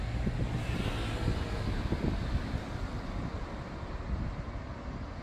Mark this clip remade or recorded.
recorded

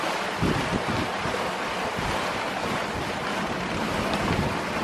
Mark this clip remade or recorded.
recorded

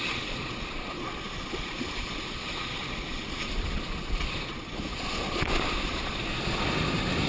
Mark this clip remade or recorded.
remade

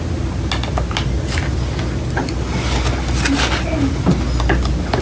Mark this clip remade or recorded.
recorded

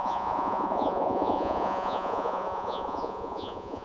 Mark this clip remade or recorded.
remade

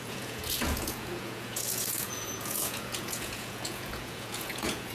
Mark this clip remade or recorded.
remade